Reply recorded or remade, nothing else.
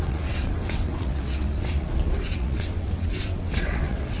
remade